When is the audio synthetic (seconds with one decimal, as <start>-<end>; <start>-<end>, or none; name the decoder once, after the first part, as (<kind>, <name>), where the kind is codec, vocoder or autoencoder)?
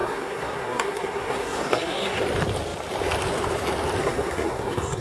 0.0-2.2 (codec, SNAC); 4.0-5.0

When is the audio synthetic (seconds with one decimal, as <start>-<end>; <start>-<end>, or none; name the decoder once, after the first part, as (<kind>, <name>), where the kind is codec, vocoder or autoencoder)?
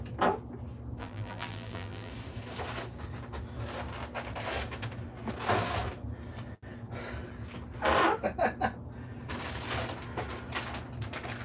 1.0-2.1 (vocoder, BigVGAN v2)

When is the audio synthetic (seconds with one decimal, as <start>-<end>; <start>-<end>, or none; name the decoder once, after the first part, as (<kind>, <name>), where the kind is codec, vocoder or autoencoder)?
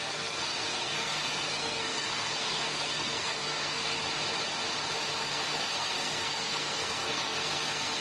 0.0-4.0 (codec, SNAC); 5.2-8.0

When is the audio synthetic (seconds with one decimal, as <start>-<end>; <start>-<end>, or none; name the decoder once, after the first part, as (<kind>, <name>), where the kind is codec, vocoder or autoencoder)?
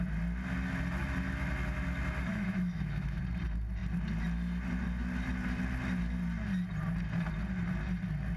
2.3-3.2 (autoencoder, DAC-VAE)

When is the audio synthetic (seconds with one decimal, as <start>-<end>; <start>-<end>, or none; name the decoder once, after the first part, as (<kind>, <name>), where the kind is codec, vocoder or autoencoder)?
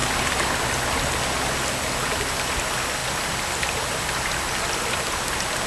none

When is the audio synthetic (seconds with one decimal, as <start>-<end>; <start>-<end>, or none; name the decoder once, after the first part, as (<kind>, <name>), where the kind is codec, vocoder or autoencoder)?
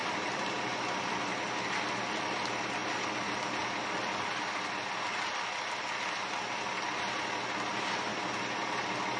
0.0-1.1 (vocoder, BigVGAN v2)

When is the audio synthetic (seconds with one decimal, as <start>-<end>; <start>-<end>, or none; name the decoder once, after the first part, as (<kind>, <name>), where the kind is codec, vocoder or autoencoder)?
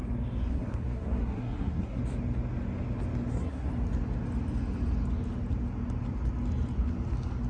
0.5-2.0 (codec, SNAC); 3.3-3.7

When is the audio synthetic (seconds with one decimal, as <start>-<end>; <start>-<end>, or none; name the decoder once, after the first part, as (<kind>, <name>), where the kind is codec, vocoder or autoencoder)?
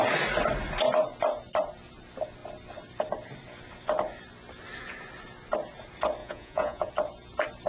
6.2-6.9 (vocoder, Vocos)